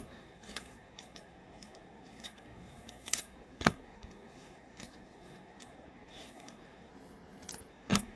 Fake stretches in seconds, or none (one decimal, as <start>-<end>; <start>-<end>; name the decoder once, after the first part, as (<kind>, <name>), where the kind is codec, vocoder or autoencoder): 0.0-6.9 (codec, SNAC); 7.7-8.2